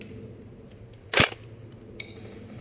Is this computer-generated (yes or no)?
no